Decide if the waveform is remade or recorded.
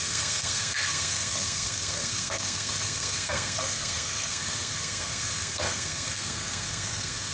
remade